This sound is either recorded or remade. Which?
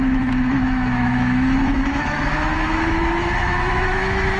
remade